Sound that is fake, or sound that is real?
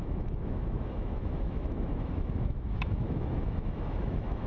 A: fake